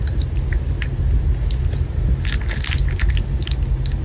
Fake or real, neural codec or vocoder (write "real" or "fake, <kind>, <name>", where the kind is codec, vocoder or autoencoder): real